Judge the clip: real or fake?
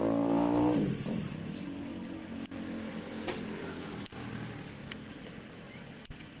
real